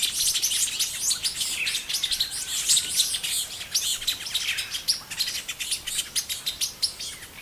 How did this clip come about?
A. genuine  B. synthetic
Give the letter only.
A